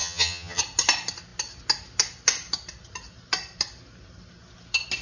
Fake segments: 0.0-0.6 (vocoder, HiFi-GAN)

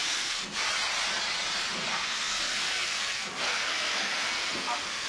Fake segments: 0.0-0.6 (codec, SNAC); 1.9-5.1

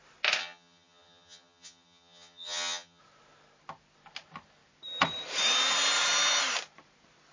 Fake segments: 0.4-3.0 (vocoder, HiFi-GAN)

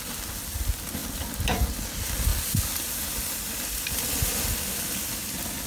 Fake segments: none

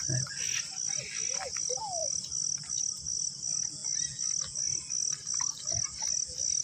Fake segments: none